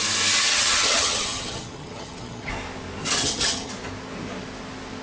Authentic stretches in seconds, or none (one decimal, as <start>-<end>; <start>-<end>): 0.0-0.5; 2.5-3.2; 3.7-5.0